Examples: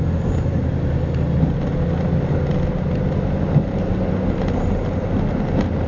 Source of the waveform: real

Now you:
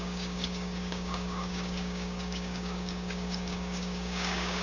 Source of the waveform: fake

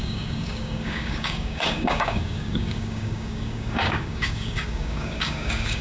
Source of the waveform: fake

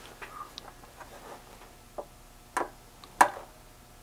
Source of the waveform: real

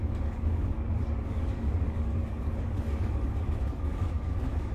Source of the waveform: fake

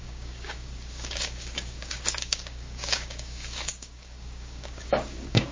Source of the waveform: fake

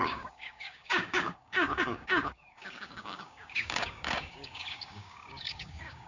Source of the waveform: fake